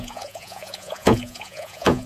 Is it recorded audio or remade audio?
remade